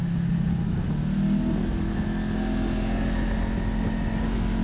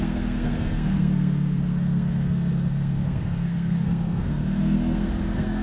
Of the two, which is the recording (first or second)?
first